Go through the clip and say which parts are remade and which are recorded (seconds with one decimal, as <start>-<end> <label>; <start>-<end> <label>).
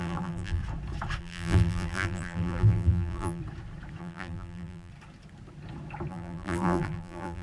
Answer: 0.0-0.6 remade; 0.6-1.2 recorded; 1.2-3.4 remade; 3.4-4.0 recorded; 4.0-4.9 remade; 4.9-6.1 recorded; 6.1-7.4 remade